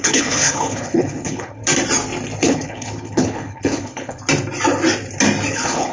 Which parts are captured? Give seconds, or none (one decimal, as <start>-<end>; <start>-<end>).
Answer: 1.6-2.4; 4.2-5.5